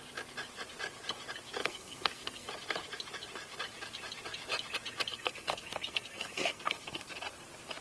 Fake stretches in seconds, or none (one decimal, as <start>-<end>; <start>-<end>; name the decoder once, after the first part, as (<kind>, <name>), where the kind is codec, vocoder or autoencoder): 1.6-2.5 (codec, SNAC); 5.1-7.1